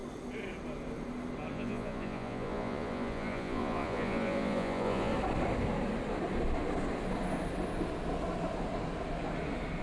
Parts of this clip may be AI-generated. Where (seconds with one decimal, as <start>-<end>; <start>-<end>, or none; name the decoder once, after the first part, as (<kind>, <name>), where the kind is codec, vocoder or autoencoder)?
1.5-5.1 (vocoder, Vocos)